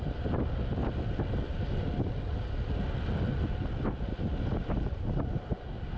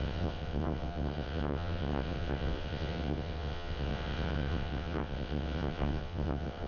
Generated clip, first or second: second